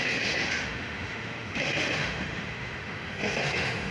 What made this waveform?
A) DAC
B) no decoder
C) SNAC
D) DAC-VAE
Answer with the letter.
D